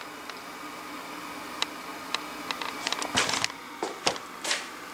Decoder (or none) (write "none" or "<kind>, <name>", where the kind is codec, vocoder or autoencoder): none